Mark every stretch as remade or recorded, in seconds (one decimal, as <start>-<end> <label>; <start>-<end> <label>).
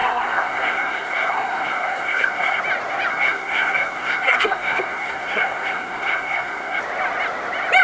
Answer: 0.0-2.6 remade; 2.6-3.1 recorded; 3.1-6.8 remade; 6.8-7.8 recorded